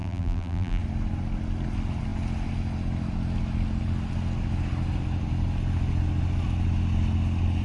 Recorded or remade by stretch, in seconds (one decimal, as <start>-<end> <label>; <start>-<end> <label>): 0.0-0.8 remade; 0.8-7.6 recorded